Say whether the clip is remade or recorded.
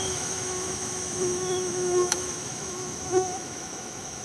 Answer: remade